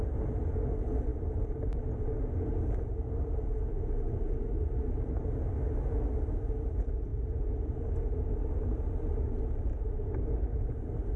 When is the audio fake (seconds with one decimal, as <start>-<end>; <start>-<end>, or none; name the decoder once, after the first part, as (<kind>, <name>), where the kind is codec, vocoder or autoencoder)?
none